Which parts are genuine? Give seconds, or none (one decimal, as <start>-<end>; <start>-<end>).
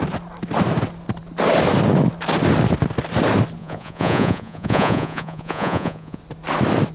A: 0.0-3.6; 6.2-6.9